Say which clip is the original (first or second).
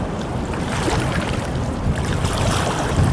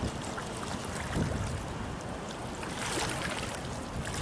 second